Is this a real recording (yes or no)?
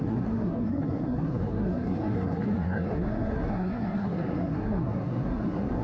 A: no